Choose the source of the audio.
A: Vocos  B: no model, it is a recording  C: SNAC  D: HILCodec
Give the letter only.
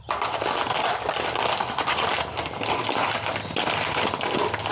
B